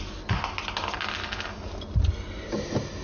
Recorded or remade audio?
recorded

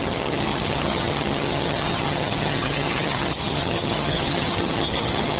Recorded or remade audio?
remade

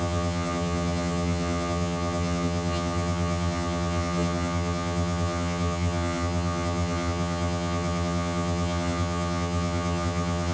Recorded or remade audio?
remade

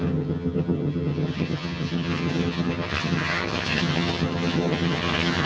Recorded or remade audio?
remade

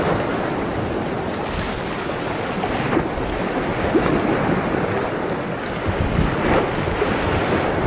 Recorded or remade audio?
recorded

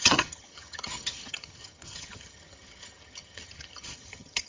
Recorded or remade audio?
remade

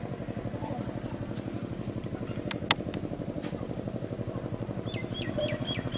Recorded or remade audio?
recorded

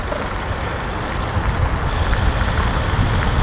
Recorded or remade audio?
recorded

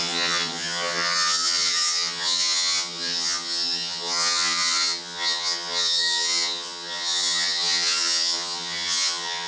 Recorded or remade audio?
remade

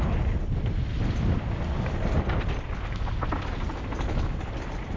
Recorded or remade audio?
recorded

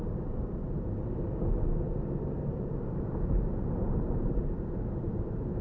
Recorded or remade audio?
recorded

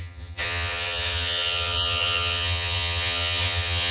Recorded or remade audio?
remade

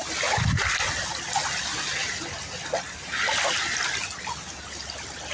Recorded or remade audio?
recorded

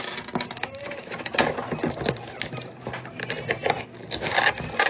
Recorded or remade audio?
recorded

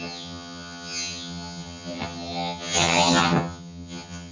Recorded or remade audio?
remade